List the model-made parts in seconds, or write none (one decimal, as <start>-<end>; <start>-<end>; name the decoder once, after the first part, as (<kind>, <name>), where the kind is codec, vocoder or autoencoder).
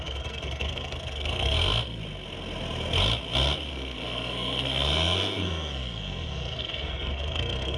0.0-2.0 (codec, SNAC); 3.7-7.8